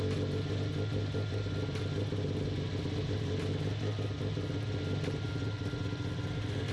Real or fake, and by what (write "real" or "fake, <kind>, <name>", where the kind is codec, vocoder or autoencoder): real